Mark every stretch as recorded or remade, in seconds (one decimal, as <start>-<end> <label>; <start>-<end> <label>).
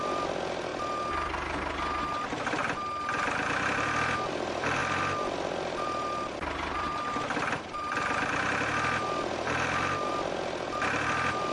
0.0-0.7 remade; 0.7-2.0 recorded; 2.0-2.6 remade; 2.6-4.3 recorded; 4.3-11.5 remade